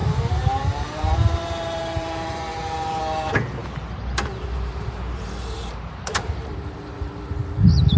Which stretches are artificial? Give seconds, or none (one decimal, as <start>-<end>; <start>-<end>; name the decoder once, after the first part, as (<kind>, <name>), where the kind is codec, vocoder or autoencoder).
0.0-3.0 (vocoder, BigVGAN v2); 3.6-7.0